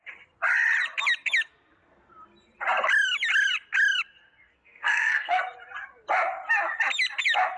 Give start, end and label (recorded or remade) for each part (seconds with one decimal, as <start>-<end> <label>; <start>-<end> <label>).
0.0-4.5 recorded; 4.5-5.4 remade; 5.4-7.6 recorded